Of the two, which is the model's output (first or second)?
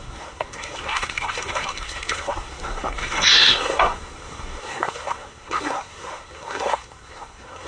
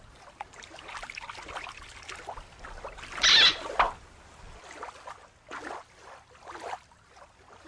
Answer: first